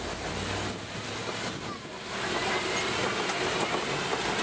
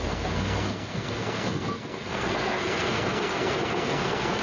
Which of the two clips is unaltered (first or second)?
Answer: first